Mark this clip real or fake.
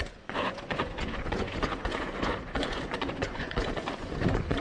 fake